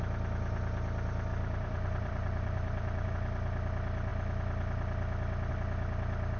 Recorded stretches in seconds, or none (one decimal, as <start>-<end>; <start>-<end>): 0.0-1.3; 3.1-6.4